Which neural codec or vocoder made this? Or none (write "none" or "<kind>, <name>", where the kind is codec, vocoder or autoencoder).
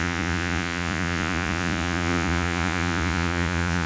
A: vocoder, Vocos